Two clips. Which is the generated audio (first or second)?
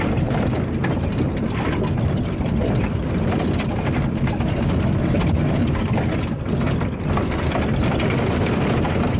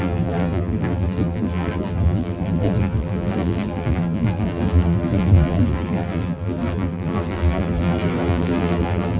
second